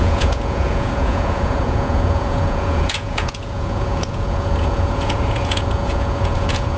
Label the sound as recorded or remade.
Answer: remade